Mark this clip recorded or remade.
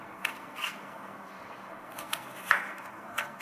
remade